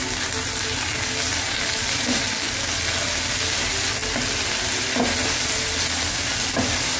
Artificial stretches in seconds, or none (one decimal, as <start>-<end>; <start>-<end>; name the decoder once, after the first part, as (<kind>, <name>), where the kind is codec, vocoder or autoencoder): 1.3-2.2 (vocoder, BigVGAN v2)